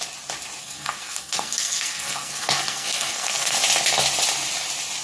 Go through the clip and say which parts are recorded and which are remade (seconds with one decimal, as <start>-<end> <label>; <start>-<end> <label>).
0.0-0.6 recorded; 0.6-3.6 remade; 3.6-5.0 recorded